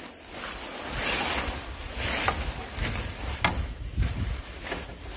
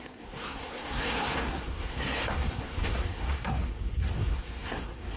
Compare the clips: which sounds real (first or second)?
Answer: first